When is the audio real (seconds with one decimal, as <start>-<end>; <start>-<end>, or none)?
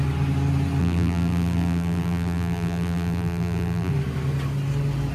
0.0-0.8; 3.9-5.1